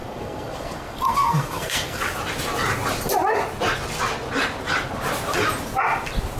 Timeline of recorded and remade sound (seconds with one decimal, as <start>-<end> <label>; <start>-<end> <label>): 0.0-2.0 remade; 2.0-6.4 recorded